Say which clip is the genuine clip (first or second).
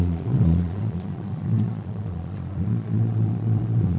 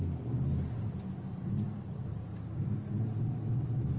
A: second